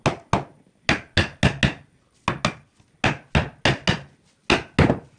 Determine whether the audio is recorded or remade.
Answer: recorded